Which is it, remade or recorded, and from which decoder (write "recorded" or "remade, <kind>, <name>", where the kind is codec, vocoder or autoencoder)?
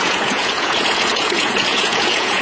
remade, vocoder, Vocos